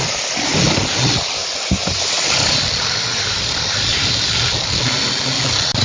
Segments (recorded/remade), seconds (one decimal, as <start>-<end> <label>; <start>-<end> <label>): 0.0-1.4 recorded; 1.4-4.8 remade; 4.8-5.8 recorded